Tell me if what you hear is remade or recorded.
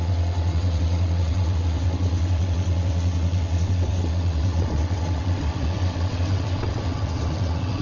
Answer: remade